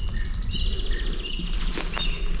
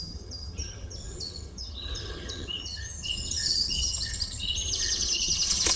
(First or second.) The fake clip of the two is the second